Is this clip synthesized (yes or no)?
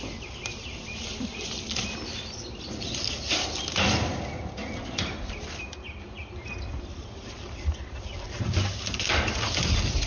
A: no